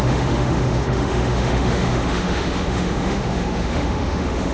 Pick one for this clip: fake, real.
fake